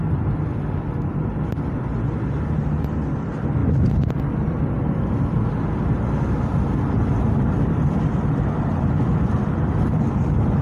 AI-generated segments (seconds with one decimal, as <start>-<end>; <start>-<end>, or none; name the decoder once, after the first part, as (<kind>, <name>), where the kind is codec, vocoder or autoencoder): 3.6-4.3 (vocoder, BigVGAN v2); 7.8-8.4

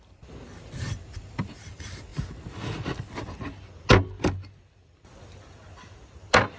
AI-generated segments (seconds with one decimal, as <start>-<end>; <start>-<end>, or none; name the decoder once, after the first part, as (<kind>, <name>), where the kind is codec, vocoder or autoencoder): none

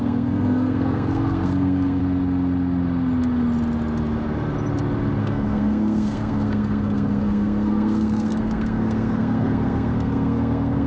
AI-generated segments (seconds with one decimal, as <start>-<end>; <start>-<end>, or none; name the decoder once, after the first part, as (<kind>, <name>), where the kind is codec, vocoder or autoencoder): 0.0-2.0 (codec, SNAC); 5.2-10.9